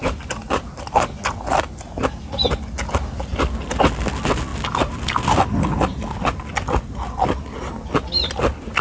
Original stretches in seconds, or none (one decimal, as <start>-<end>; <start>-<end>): 0.0-8.8